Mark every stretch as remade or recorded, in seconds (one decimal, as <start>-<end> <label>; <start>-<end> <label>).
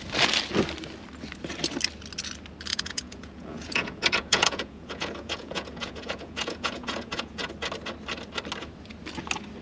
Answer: 0.0-2.7 recorded; 2.7-7.5 remade; 7.5-9.6 recorded